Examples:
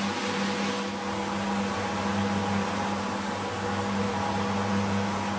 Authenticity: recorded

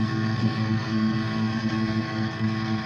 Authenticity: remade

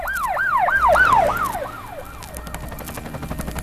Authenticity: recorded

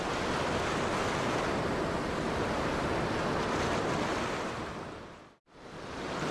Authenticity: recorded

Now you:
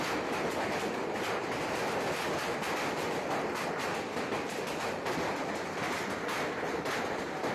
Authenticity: recorded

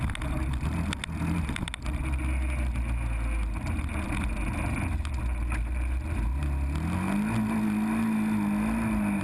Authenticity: recorded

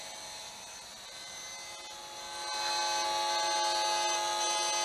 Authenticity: recorded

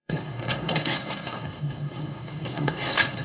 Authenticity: remade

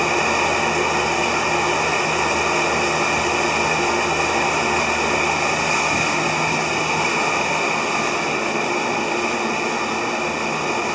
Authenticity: recorded